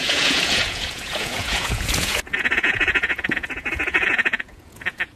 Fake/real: fake